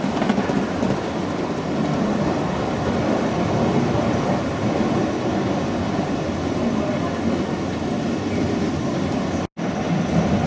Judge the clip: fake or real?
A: real